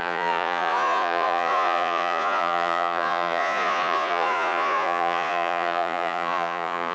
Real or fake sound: fake